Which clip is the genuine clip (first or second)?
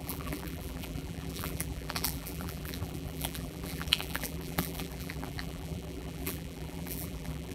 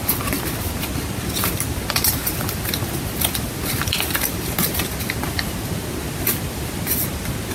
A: second